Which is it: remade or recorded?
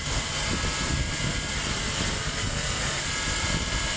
recorded